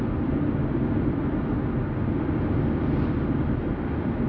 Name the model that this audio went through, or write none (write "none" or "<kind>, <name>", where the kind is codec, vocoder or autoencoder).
none